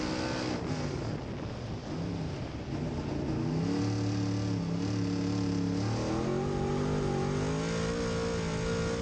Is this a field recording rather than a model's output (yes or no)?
yes